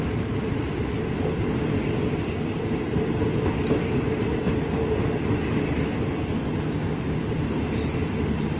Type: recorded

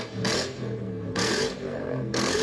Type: remade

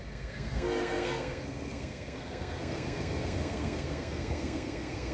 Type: remade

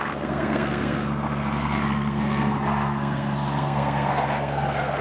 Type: remade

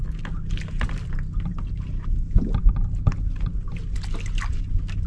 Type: recorded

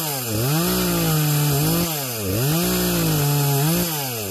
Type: recorded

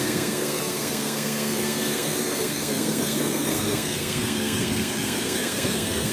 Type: remade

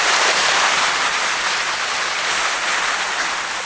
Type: recorded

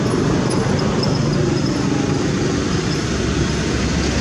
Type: recorded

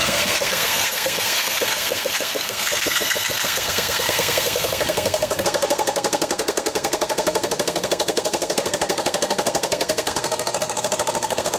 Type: remade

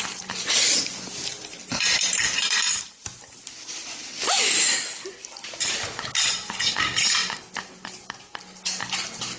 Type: recorded